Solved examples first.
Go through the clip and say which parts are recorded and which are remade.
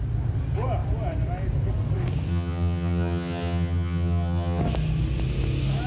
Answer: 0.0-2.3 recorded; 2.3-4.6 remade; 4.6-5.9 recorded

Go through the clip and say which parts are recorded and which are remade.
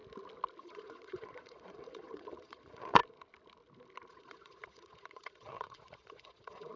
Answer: 0.0-0.6 recorded; 0.6-3.0 remade; 3.0-4.1 recorded; 4.1-6.8 remade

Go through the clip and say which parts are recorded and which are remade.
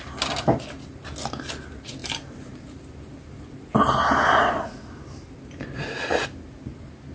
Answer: 0.0-2.0 recorded; 2.0-2.8 remade; 2.8-7.1 recorded